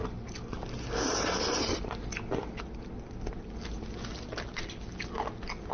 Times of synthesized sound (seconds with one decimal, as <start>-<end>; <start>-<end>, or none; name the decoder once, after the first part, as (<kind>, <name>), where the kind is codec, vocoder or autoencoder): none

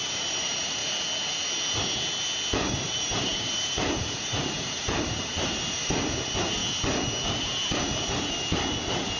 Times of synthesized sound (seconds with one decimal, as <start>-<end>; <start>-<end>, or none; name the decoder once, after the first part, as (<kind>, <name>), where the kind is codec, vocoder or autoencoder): 0.0-0.8 (vocoder, BigVGAN v2); 2.7-6.6; 7.4-9.2

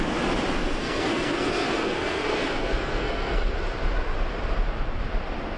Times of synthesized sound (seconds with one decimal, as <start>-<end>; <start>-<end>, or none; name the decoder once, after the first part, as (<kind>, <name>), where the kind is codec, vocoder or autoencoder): 0.8-3.5 (codec, SNAC)

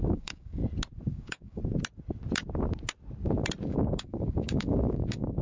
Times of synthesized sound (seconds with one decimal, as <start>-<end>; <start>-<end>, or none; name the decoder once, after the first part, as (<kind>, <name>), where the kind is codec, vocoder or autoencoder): 0.0-0.6 (codec, DAC); 1.1-1.6; 3.7-5.4

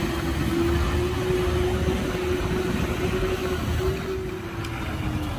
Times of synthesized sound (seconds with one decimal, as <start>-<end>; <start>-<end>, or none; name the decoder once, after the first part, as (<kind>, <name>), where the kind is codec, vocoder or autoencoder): none

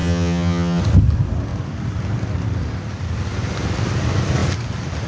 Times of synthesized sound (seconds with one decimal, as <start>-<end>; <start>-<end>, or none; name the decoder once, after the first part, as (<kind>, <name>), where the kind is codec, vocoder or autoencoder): 0.0-0.8 (vocoder, HiFi-GAN)